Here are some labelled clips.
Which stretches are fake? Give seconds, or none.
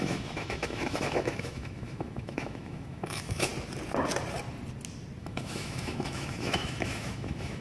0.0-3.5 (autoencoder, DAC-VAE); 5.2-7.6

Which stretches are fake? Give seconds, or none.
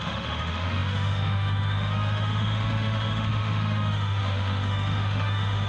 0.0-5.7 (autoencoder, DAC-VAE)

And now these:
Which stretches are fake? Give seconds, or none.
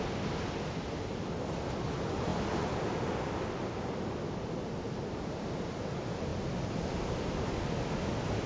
none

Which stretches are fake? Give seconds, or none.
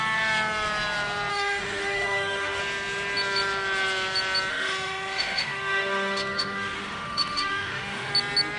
1.3-2.6 (autoencoder, DAC-VAE); 4.5-8.1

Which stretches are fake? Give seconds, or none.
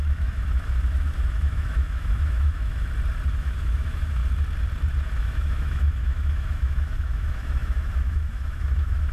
0.0-2.7 (autoencoder, DAC-VAE); 3.3-4.2; 5.0-9.1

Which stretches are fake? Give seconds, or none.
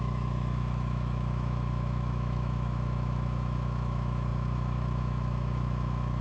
0.0-6.2 (autoencoder, DAC-VAE)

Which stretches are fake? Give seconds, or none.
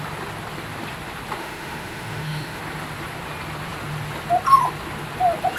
1.4-2.6 (autoencoder, DAC-VAE)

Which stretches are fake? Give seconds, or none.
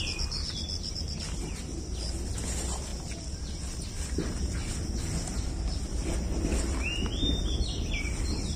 none